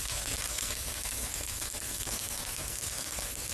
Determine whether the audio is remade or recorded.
remade